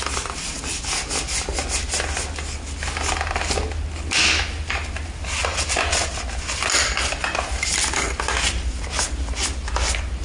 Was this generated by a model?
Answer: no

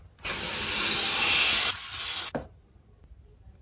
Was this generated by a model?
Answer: no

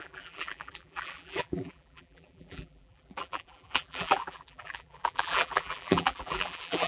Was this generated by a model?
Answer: yes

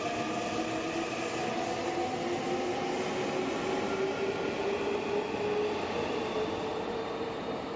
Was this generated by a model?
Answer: no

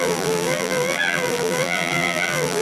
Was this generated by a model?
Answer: yes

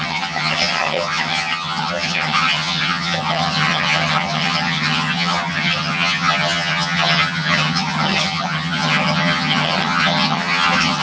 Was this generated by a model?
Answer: yes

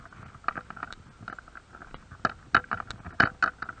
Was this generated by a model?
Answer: no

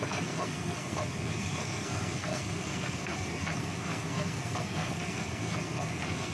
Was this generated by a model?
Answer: yes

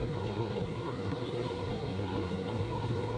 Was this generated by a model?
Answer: yes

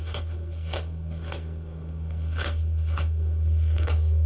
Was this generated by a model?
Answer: yes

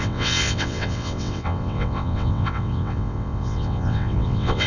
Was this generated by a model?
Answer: yes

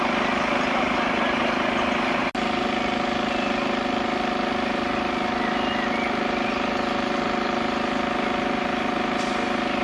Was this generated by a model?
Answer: no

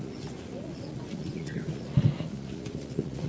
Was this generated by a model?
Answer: yes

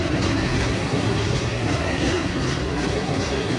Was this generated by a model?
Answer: yes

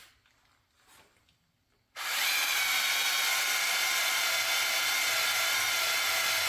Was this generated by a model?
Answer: no